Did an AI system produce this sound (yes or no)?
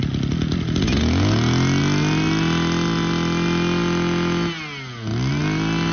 no